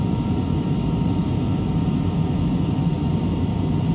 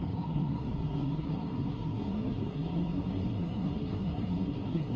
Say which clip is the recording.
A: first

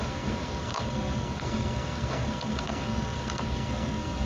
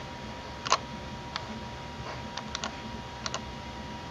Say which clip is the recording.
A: second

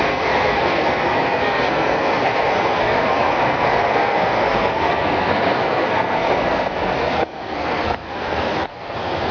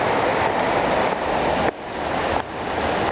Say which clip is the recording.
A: second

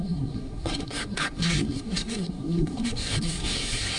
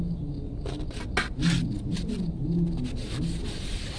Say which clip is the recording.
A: second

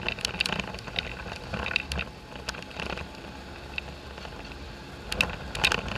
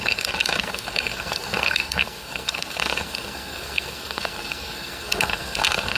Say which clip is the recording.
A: first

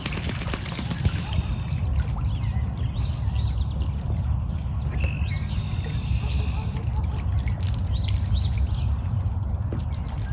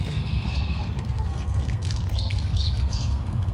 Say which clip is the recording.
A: first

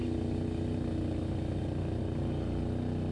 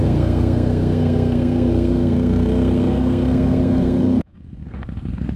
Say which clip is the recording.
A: first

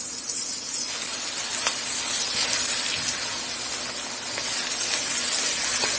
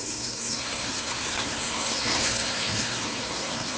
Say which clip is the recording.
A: first